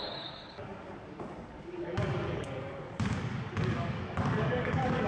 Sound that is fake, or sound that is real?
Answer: fake